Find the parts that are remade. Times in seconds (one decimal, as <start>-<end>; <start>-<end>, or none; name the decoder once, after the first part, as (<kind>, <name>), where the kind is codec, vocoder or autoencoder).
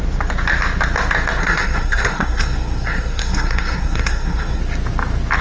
1.4-4.6 (codec, SNAC)